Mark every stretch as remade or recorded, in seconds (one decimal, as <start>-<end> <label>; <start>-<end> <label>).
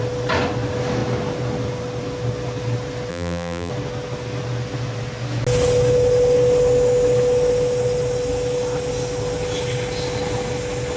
0.0-3.1 recorded; 3.1-3.7 remade; 3.7-11.0 recorded